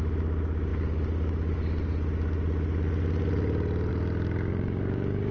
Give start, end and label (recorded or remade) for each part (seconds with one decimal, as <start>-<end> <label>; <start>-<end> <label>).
0.0-4.5 recorded; 4.5-5.3 remade